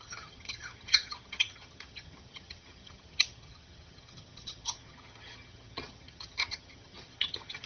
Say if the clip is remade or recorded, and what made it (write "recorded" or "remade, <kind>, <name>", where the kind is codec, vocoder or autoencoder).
remade, vocoder, HiFi-GAN